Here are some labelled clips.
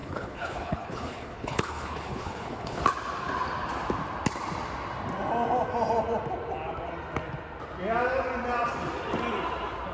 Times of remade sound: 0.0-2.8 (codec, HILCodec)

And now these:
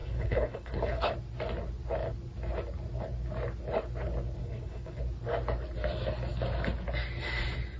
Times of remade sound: 0.0-1.1 (codec, HILCodec); 4.4-5.0

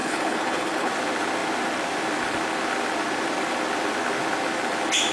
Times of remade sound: 0.0-0.9 (codec, HILCodec)

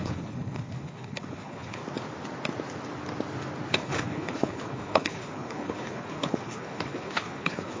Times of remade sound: 0.0-1.8 (codec, HILCodec); 3.7-7.8

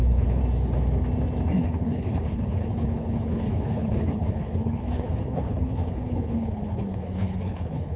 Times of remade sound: 0.0-0.4 (codec, HILCodec); 1.6-8.0

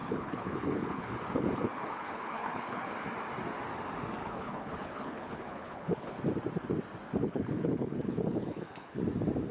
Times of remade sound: 0.0-2.9 (codec, HILCodec); 4.2-6.2; 7.2-9.0

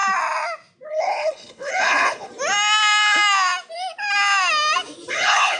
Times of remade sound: 0.9-2.3 (codec, HILCodec); 5.1-5.6

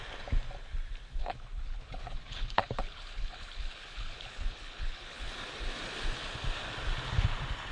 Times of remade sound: 1.2-5.3 (codec, HILCodec)